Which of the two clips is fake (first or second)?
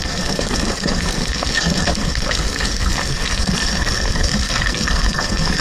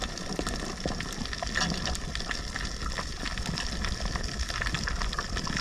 first